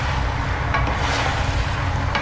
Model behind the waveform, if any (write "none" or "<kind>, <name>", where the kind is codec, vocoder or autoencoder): none